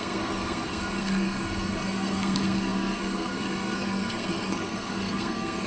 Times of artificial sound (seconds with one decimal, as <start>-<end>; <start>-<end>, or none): 0.0-5.7